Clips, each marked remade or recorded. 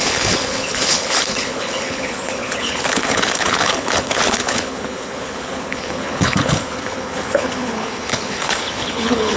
remade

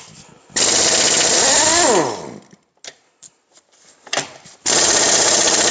recorded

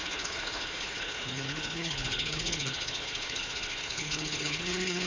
remade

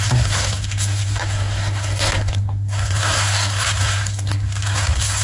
remade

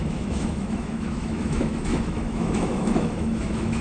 remade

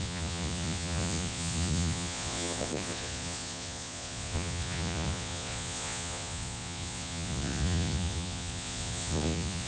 remade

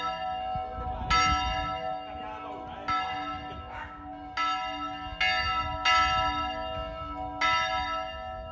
recorded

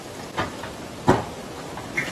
recorded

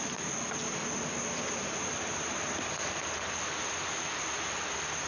recorded